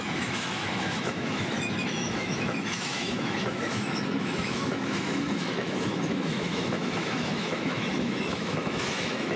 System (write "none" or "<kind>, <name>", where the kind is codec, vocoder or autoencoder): autoencoder, DAC-VAE